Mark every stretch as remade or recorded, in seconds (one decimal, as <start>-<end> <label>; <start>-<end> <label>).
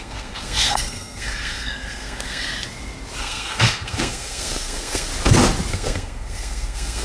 0.0-2.5 remade; 2.5-3.2 recorded; 3.2-5.1 remade; 5.1-5.7 recorded; 5.7-7.0 remade